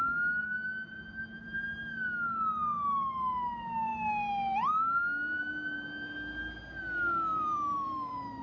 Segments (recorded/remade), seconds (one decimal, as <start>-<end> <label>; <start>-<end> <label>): 0.0-7.3 recorded; 7.3-8.4 remade

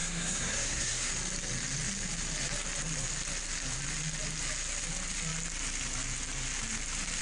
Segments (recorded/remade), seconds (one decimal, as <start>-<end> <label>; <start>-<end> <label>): 0.0-1.1 remade; 1.1-7.2 recorded